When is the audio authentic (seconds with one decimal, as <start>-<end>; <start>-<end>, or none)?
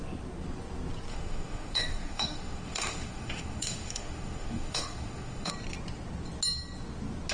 0.0-1.1; 5.5-7.3